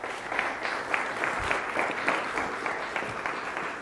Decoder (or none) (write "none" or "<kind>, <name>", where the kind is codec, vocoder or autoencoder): none